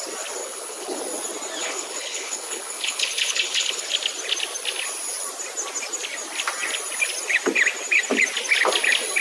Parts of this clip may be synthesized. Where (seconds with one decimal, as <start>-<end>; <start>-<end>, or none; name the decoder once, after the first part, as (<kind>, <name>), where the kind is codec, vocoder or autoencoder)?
0.4-1.0 (codec, HILCodec); 1.6-3.9

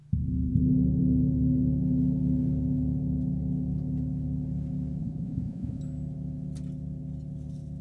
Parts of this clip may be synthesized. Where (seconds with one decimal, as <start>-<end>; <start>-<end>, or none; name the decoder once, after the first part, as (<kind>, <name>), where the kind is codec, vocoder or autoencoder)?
5.0-5.8 (vocoder, Vocos)

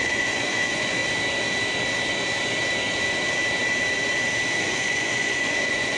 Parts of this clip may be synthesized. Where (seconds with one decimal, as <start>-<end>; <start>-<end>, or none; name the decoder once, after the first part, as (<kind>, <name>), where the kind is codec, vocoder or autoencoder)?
0.0-1.0 (vocoder, Vocos); 4.6-6.0

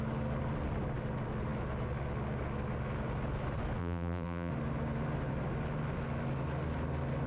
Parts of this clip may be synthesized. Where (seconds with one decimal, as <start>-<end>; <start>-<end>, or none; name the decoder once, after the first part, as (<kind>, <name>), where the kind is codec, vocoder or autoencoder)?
3.8-4.5 (vocoder, BigVGAN v2)

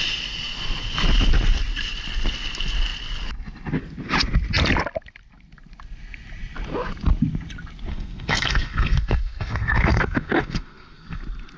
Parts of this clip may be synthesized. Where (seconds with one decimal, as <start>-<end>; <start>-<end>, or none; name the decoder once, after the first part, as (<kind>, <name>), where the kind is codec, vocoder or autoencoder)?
7.9-11.2 (codec, SNAC)

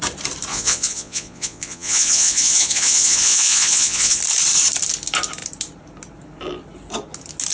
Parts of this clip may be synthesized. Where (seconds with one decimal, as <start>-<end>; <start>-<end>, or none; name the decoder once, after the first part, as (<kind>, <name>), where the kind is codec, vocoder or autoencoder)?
0.5-4.2 (vocoder, Vocos)